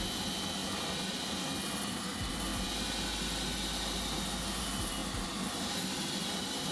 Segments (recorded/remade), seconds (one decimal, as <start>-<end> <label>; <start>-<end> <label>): 0.0-6.7 recorded